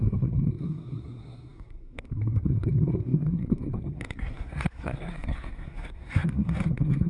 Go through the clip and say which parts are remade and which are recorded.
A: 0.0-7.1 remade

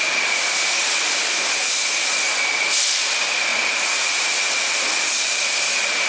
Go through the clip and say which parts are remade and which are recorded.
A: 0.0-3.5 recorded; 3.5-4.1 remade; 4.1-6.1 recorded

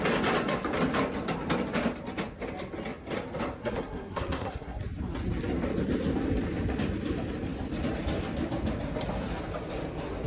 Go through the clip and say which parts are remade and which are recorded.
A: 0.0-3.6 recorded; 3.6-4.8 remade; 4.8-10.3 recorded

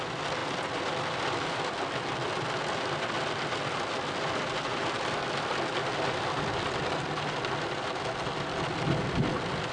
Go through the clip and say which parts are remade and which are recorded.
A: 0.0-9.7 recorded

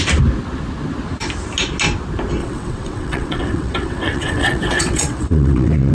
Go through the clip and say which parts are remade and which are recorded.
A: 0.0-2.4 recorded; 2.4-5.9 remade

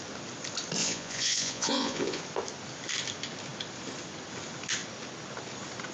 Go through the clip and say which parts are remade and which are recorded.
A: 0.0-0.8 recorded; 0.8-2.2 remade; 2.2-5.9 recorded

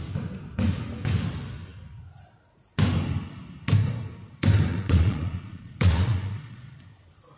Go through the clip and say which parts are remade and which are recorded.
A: 0.0-4.7 recorded; 4.7-6.7 remade; 6.7-7.4 recorded

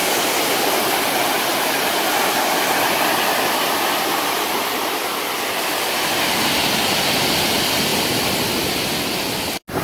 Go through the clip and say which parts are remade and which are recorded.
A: 0.0-9.8 recorded